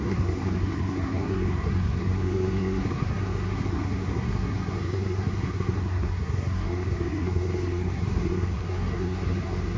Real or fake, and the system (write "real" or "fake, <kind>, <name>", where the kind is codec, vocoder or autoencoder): fake, codec, SNAC